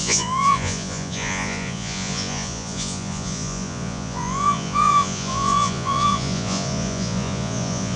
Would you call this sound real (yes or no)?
no